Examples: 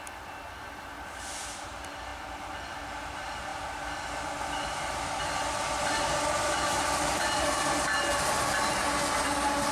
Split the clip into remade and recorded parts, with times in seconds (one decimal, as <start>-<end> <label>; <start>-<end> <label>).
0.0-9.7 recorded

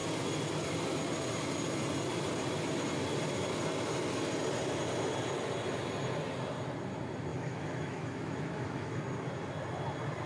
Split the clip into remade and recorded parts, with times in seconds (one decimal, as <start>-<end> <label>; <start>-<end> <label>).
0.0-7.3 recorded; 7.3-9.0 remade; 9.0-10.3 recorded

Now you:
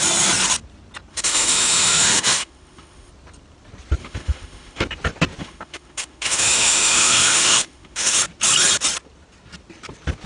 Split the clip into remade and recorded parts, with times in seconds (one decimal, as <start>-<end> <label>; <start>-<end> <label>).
0.0-1.1 recorded; 1.1-3.1 remade; 3.1-4.0 recorded; 4.0-4.8 remade; 4.8-5.4 recorded; 5.4-8.2 remade; 8.2-10.3 recorded